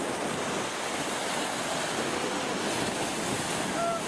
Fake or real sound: real